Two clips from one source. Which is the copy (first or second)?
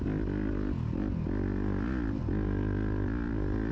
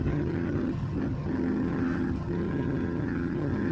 second